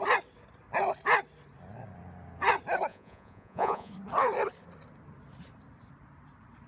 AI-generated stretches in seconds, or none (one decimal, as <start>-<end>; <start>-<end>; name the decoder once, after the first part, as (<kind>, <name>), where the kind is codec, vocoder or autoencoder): 2.9-3.9 (vocoder, Vocos)